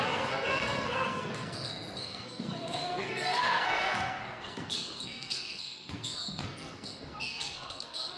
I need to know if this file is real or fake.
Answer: fake